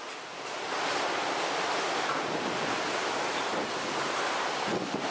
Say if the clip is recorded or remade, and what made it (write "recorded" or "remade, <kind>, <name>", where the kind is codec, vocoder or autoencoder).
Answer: recorded